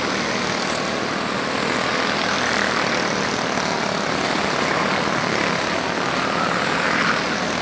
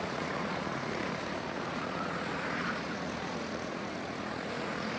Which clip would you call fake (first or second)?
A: second